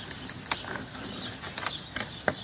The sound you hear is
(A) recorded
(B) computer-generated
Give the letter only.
A